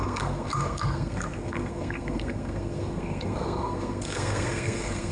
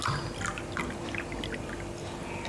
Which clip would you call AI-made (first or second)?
first